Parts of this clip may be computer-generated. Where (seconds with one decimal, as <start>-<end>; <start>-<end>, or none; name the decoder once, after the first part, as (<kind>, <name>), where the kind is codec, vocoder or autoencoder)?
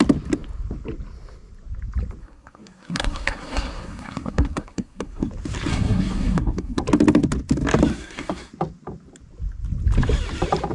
2.2-5.3 (codec, SNAC); 5.7-6.8; 7.9-8.5